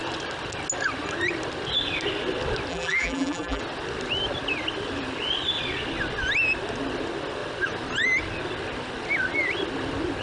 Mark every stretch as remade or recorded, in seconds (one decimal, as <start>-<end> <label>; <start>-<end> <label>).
0.0-2.7 recorded; 2.7-3.6 remade; 3.6-10.2 recorded